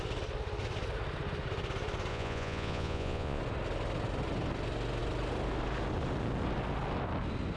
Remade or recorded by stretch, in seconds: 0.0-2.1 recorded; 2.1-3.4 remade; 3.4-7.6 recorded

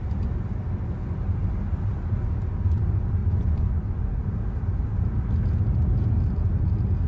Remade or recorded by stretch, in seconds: 0.0-3.2 recorded; 3.2-4.2 remade; 4.2-7.1 recorded

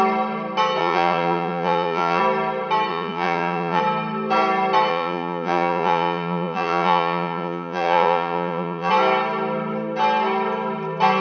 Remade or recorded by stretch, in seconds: 0.0-0.8 recorded; 0.8-2.2 remade; 2.2-2.9 recorded; 2.9-3.8 remade; 3.8-4.9 recorded; 4.9-8.9 remade; 8.9-11.2 recorded

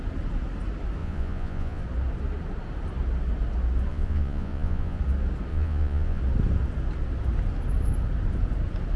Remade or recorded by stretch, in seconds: 0.0-1.0 recorded; 1.0-1.8 remade; 1.8-3.9 recorded; 3.9-5.0 remade; 5.0-5.5 recorded; 5.5-6.2 remade; 6.2-9.0 recorded